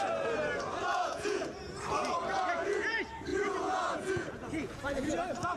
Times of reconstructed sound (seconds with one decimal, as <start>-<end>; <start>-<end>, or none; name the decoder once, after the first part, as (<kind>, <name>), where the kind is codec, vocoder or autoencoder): 0.9-1.4 (vocoder, Vocos); 3.3-5.1